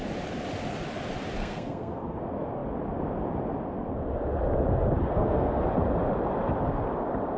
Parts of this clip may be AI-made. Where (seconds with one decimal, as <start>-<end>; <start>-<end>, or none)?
1.4-2.2; 5.1-5.6